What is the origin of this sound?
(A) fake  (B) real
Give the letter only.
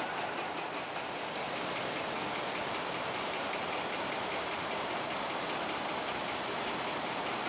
B